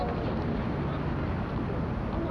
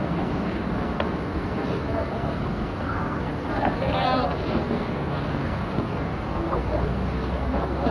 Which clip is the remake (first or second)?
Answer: second